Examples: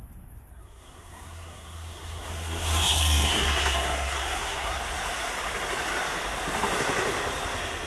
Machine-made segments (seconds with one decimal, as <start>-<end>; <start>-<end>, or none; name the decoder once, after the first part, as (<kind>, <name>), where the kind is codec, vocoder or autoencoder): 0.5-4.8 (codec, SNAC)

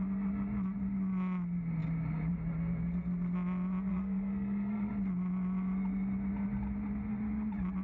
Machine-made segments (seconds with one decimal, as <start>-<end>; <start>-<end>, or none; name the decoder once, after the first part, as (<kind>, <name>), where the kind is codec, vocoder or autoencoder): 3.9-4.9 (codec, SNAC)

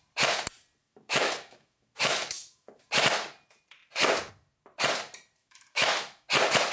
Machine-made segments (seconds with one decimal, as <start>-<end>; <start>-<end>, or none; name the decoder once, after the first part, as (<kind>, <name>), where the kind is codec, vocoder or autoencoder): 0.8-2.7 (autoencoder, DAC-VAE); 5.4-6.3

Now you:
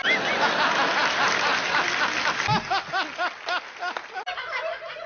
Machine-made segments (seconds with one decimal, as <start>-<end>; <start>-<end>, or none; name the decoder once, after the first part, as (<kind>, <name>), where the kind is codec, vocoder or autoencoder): none

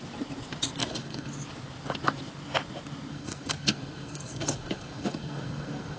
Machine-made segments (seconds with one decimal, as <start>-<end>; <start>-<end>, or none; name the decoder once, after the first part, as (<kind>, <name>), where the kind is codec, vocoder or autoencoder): 0.8-1.3 (codec, SNAC); 3.1-6.0